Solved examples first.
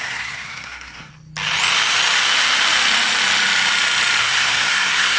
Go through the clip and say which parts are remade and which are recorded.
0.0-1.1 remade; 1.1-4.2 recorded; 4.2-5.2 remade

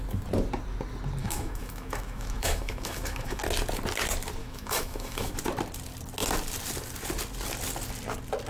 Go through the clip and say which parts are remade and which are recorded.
0.0-1.2 recorded; 1.2-3.4 remade; 3.4-4.4 recorded; 4.4-5.3 remade; 5.3-8.5 recorded

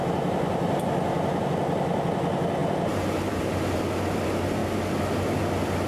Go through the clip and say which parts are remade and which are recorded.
0.0-1.5 remade; 1.5-2.6 recorded; 2.6-3.8 remade; 3.8-5.9 recorded

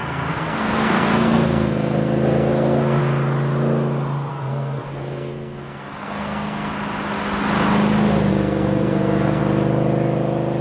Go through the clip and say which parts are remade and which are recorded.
0.0-3.0 remade; 3.0-4.3 recorded; 4.3-6.7 remade; 6.7-8.3 recorded; 8.3-9.4 remade; 9.4-10.6 recorded

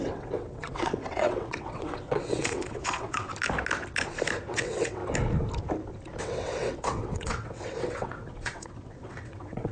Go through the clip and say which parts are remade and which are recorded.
0.0-3.3 remade; 3.3-4.5 recorded; 4.5-5.0 remade; 5.0-6.2 recorded; 6.2-9.7 remade

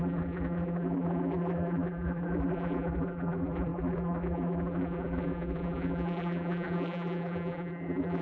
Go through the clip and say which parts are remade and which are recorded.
0.0-8.2 remade

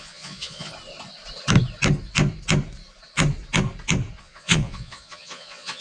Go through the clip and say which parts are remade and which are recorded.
0.0-0.7 remade; 0.7-4.2 recorded; 4.2-5.8 remade

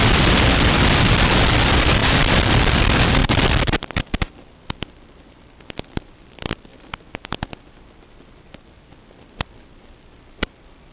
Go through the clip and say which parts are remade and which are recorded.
0.0-6.7 remade; 6.7-7.7 recorded; 7.7-10.9 remade